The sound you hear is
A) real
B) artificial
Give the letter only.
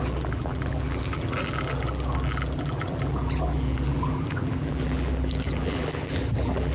B